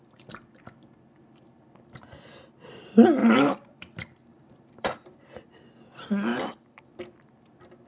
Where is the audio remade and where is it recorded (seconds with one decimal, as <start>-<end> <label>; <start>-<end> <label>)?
0.0-3.2 recorded; 3.2-3.7 remade; 3.7-4.3 recorded; 4.3-5.5 remade; 5.5-6.3 recorded; 6.3-6.9 remade; 6.9-7.9 recorded